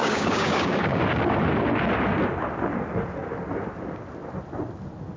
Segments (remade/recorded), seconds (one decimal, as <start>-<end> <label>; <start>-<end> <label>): 0.0-1.0 remade; 1.0-5.2 recorded